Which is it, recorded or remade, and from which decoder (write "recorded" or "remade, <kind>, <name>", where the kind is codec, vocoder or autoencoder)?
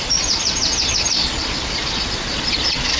remade, vocoder, Vocos